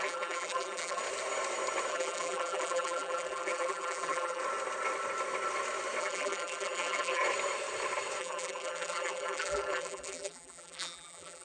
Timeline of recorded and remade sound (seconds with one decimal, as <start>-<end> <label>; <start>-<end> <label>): 0.0-1.0 remade; 1.0-1.9 recorded; 1.9-4.4 remade; 4.4-6.0 recorded; 6.0-7.2 remade; 7.2-8.2 recorded; 8.2-11.4 remade